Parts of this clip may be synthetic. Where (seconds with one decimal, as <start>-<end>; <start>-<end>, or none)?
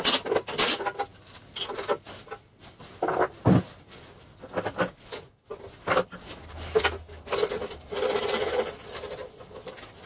none